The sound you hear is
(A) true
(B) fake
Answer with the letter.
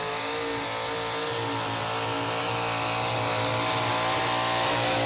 A